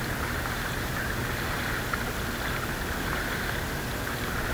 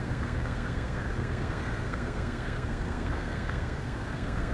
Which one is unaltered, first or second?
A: first